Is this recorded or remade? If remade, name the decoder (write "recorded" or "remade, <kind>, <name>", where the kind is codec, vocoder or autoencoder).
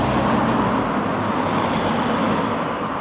recorded